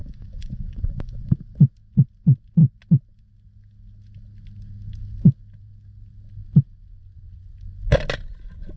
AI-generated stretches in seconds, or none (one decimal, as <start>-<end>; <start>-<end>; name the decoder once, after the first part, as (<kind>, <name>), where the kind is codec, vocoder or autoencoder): 0.0-1.3 (vocoder, Vocos)